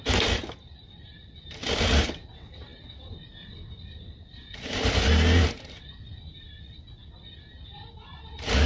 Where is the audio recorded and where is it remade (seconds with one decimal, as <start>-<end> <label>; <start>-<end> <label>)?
0.0-8.7 recorded